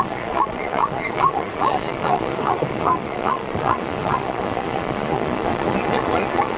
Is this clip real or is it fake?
fake